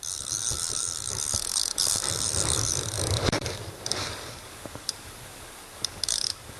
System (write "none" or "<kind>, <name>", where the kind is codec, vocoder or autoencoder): codec, DAC